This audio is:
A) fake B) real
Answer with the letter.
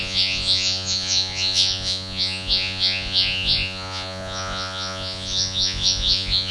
A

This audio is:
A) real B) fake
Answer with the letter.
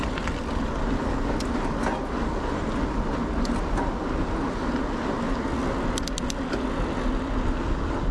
A